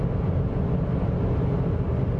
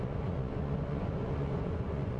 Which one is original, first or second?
first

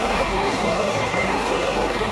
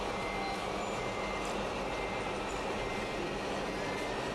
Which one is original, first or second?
second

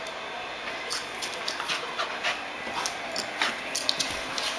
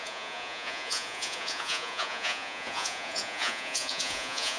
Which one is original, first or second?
first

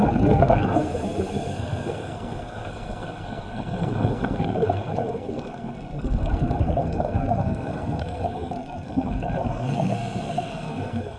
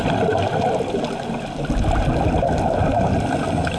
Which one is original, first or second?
second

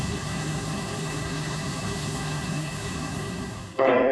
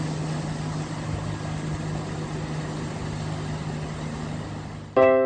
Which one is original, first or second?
second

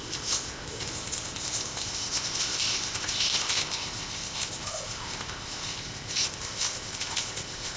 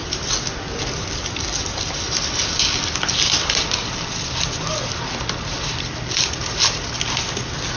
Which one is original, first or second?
second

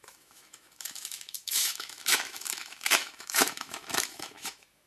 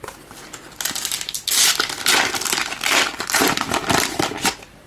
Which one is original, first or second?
second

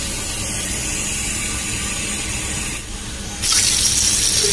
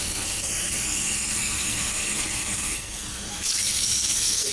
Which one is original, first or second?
first